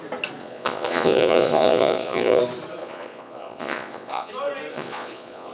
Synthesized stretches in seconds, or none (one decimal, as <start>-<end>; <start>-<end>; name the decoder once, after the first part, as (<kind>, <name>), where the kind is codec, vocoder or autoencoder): 0.4-2.4 (vocoder, Vocos); 2.8-4.3; 4.7-5.5